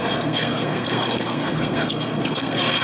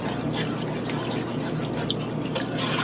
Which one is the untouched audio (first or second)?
second